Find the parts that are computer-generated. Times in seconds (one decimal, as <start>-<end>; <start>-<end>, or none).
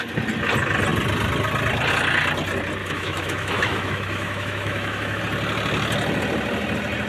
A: 2.8-5.2